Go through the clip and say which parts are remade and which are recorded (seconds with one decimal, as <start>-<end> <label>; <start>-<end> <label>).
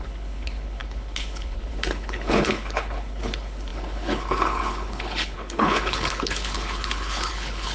0.0-7.7 remade